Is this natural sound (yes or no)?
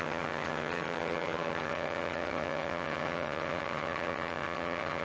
no